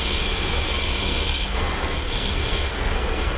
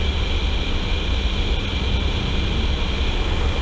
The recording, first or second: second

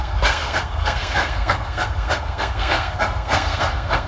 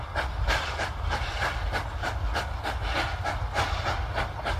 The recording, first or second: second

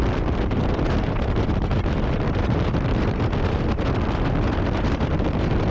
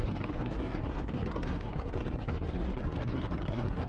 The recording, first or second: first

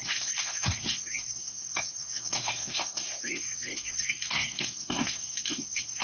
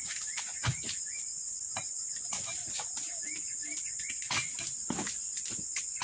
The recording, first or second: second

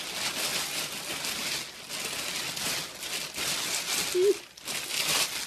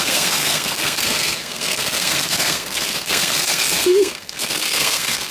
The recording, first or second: first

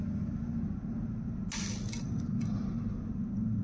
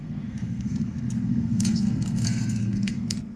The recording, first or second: first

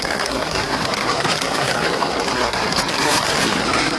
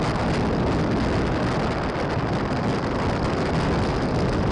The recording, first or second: second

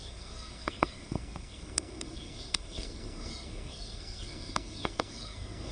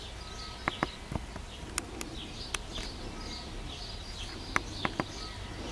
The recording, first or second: second